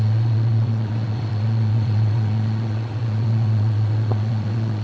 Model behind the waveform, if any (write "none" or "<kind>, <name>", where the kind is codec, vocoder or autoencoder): vocoder, WaveNeXt